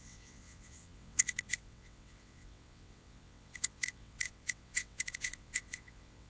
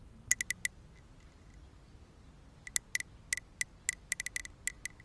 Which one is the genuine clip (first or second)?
second